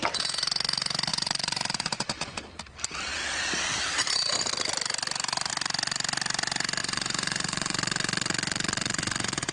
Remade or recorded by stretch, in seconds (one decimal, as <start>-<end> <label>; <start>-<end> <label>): 0.0-1.1 recorded; 1.1-2.4 remade; 2.4-6.8 recorded; 6.8-9.5 remade